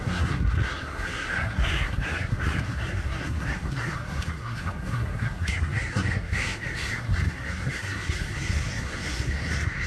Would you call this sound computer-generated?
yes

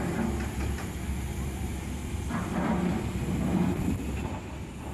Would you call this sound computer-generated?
no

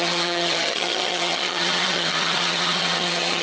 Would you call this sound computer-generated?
yes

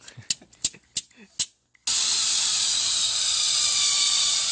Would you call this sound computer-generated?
no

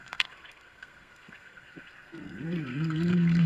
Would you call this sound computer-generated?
yes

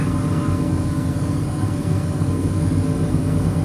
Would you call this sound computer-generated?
yes